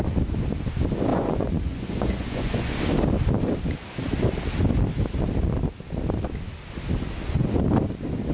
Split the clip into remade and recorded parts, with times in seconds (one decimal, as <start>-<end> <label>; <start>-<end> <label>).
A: 0.0-1.1 recorded; 1.1-2.7 remade; 2.7-8.3 recorded